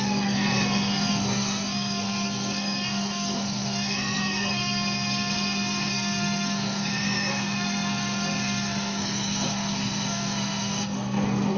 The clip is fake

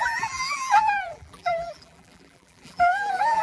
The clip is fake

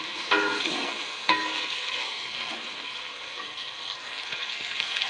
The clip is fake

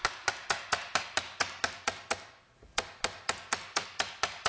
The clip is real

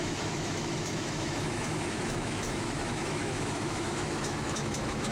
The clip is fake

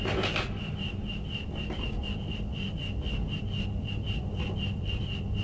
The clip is real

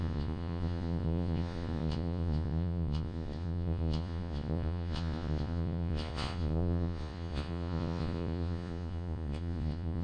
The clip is fake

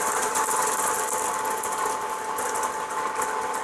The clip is real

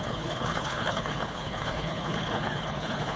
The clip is fake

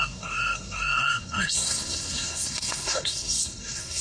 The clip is fake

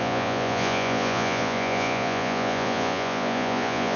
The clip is fake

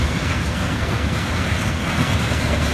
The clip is fake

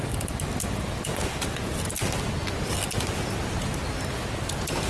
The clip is real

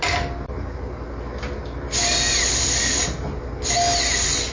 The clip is real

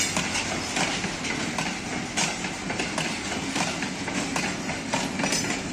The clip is real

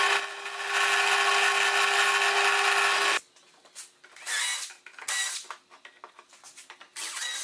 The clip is real